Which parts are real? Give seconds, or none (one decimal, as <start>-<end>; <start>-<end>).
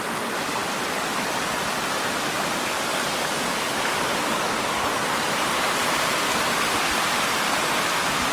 0.0-2.9; 5.1-8.3